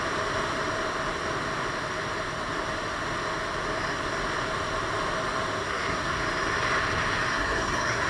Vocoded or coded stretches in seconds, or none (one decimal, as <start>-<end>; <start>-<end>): 5.6-6.2; 7.3-8.1